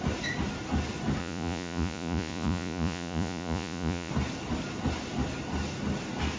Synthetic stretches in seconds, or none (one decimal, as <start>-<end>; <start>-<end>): 1.2-4.1